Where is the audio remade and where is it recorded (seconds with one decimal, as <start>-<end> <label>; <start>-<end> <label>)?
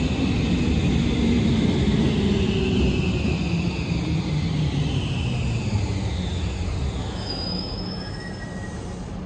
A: 0.0-7.0 recorded; 7.0-8.3 remade; 8.3-9.3 recorded